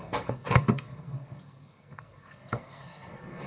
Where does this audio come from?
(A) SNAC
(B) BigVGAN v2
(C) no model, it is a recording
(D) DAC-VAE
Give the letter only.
A